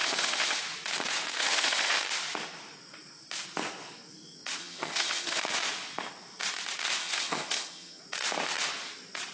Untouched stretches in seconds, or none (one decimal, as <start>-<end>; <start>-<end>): 0.6-1.4; 2.0-4.6; 5.4-7.0; 8.0-9.3